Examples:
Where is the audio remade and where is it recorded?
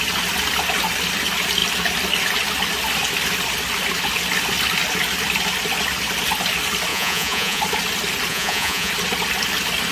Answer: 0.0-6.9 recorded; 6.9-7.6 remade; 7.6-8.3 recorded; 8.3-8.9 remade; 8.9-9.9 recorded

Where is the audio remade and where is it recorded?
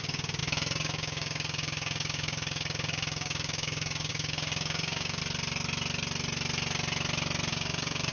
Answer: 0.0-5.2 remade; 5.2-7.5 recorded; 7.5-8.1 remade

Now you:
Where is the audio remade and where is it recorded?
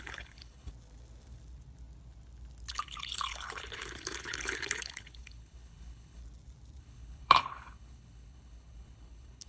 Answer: 0.0-0.7 remade; 0.7-2.7 recorded; 2.7-6.2 remade; 6.2-6.8 recorded; 6.8-9.5 remade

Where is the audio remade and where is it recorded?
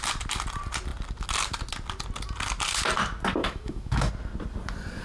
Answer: 0.0-3.4 recorded; 3.4-4.1 remade; 4.1-5.0 recorded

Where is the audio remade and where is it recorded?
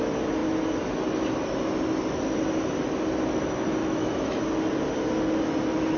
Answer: 0.0-3.8 recorded; 3.8-4.4 remade; 4.4-6.0 recorded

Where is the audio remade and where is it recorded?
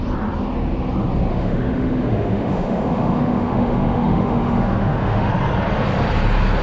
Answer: 0.0-1.3 recorded; 1.3-5.3 remade; 5.3-6.6 recorded